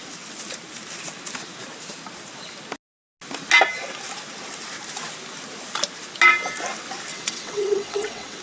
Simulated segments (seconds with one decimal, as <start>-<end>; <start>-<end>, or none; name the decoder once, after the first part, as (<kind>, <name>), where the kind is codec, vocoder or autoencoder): 7.1-8.4 (vocoder, WaveNeXt)